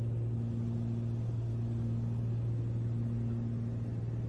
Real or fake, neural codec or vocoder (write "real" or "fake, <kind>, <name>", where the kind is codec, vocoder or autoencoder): real